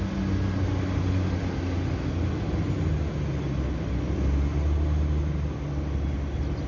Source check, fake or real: real